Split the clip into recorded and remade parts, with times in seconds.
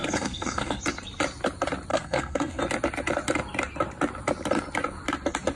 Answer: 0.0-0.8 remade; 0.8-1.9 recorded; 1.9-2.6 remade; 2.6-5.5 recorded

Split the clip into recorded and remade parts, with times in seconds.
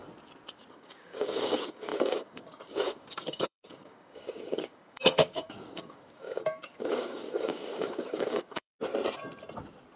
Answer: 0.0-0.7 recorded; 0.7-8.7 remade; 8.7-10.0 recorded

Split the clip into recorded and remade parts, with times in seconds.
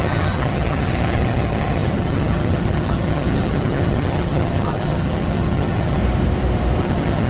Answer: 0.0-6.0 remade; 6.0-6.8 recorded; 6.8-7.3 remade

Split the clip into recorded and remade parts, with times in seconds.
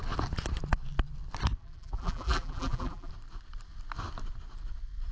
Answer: 0.0-1.6 recorded; 1.6-3.1 remade; 3.1-5.1 recorded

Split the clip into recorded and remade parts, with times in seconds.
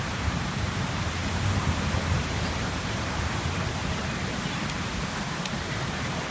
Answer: 0.0-3.8 remade; 3.8-5.3 recorded; 5.3-6.3 remade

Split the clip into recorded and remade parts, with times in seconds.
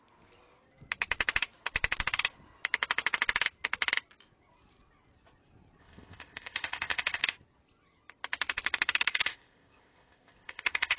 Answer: 0.0-5.8 recorded; 5.8-7.2 remade; 7.2-9.1 recorded; 9.1-11.0 remade